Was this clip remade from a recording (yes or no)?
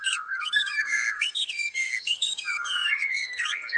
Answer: yes